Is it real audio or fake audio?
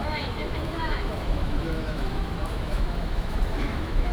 fake